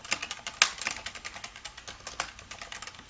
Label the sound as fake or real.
real